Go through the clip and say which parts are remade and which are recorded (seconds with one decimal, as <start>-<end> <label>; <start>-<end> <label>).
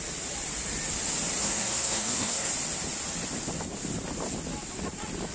0.0-1.4 recorded; 1.4-2.5 remade; 2.5-5.3 recorded